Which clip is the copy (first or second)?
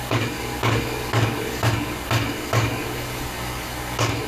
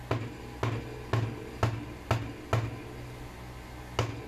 first